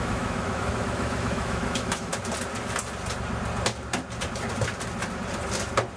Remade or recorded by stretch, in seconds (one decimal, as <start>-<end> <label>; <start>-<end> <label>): 0.0-2.1 remade; 2.1-6.0 recorded